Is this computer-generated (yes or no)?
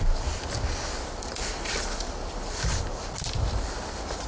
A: no